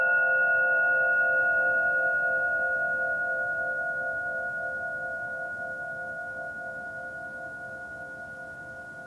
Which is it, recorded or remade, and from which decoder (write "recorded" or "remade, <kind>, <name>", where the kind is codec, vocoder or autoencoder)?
recorded